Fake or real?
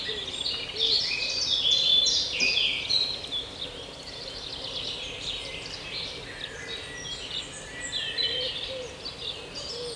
real